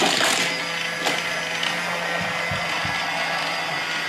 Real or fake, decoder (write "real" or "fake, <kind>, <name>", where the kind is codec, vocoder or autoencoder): real